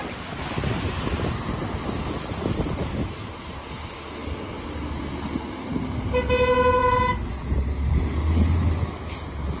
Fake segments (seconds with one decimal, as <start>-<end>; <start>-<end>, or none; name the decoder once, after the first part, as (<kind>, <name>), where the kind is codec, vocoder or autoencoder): none